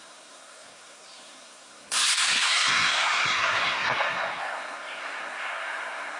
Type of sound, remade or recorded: remade